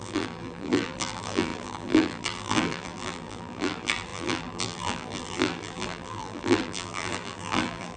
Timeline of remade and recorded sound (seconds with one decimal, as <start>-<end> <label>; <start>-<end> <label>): 0.0-8.0 remade